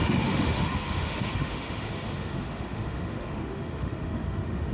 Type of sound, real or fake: fake